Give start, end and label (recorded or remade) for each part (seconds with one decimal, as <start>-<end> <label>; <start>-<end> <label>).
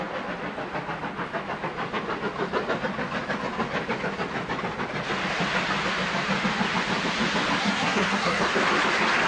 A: 0.0-7.6 recorded; 7.6-8.4 remade; 8.4-9.3 recorded